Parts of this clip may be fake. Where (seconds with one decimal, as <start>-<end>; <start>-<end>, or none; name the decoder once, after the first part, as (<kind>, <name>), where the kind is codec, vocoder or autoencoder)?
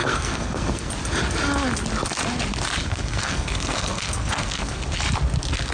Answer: 0.0-0.9 (codec, SNAC); 2.8-4.8